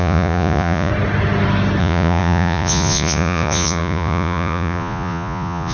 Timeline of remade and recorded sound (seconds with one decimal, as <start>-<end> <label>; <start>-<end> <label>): 0.0-0.9 remade; 0.9-1.8 recorded; 1.8-5.7 remade

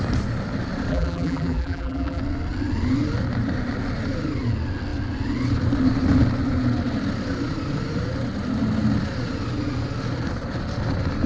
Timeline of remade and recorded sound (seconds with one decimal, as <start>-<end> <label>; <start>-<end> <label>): 0.0-0.9 recorded; 0.9-2.2 remade; 2.2-11.3 recorded

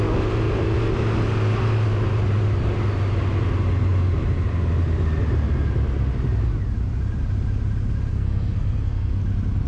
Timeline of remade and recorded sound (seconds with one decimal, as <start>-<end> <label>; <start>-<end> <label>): 0.0-8.1 recorded; 8.1-9.2 remade; 9.2-9.7 recorded